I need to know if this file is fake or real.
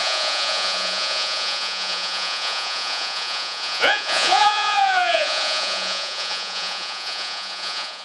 fake